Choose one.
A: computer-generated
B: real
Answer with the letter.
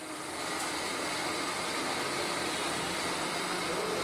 B